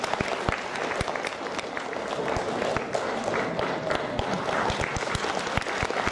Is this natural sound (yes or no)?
yes